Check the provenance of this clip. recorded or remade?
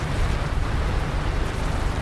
remade